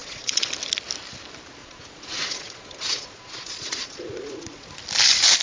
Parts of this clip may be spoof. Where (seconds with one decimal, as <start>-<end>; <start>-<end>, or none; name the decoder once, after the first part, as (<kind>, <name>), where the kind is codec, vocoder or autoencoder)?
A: 0.0-0.5 (vocoder, Vocos); 1.6-4.7